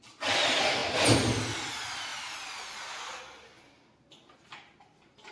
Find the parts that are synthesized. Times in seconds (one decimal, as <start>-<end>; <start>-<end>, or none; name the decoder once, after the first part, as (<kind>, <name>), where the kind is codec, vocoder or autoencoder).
none